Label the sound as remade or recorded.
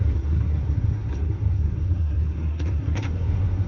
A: remade